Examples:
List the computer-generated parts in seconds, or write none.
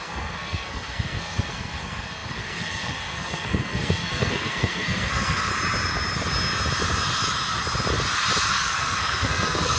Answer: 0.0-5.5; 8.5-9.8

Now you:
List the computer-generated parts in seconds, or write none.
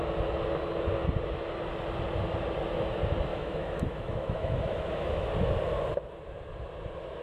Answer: 3.3-5.3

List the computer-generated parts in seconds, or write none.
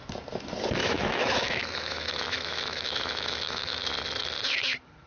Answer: 0.8-3.9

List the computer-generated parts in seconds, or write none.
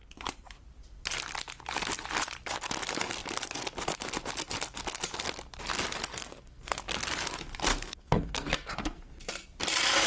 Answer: 6.1-6.8; 7.7-9.3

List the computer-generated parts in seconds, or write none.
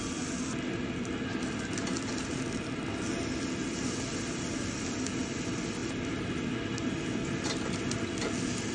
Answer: none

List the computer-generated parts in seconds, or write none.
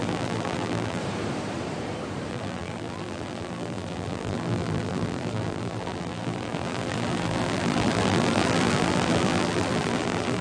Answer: 0.0-1.0; 2.3-10.4